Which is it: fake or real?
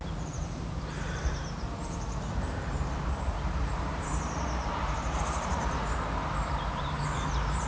fake